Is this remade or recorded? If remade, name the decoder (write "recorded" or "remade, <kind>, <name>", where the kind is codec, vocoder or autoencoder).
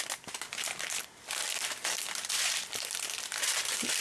recorded